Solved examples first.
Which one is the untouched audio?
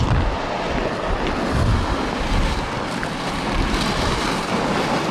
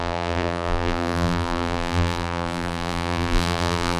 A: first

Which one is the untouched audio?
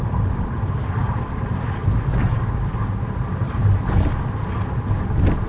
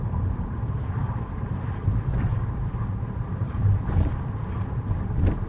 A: first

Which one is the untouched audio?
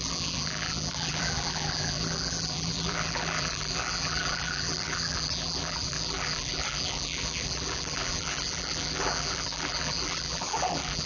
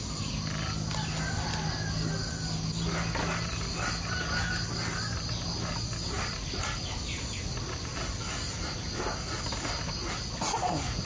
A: second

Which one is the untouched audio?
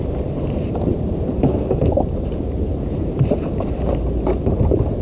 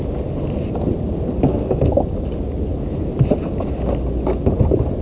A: second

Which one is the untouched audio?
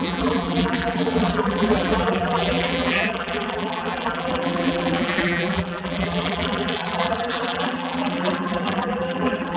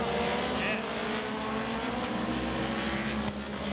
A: second